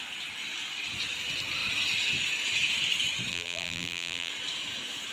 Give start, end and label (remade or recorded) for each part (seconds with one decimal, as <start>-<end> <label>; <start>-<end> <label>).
0.0-3.3 recorded; 3.3-4.3 remade; 4.3-5.1 recorded

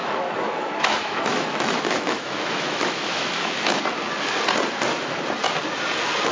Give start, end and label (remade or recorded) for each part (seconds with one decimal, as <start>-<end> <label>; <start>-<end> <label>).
0.0-3.8 remade; 3.8-6.3 recorded